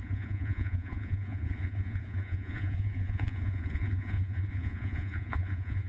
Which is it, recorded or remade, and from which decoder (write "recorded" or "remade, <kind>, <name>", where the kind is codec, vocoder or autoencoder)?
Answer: remade, vocoder, Vocos